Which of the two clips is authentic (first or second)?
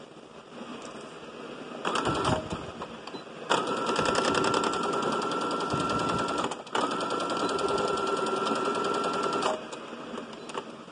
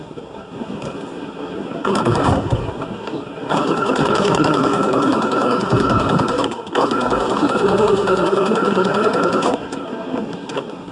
first